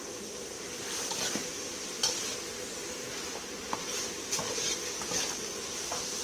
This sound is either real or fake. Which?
real